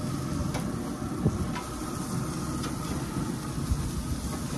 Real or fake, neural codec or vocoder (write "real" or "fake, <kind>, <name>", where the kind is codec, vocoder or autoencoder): real